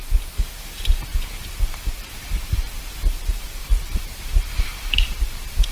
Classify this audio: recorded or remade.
remade